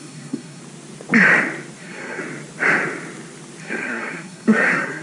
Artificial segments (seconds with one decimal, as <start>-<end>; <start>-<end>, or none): 0.0-0.6; 1.8-2.2; 3.6-5.0